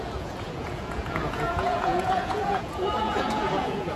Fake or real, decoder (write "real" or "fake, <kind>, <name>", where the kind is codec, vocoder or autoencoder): fake, vocoder, Vocos